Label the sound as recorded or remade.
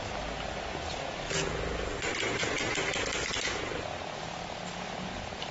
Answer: recorded